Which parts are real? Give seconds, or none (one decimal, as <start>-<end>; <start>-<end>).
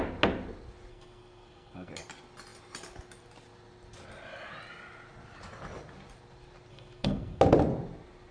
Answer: 0.0-0.9; 1.9-6.7; 7.4-8.3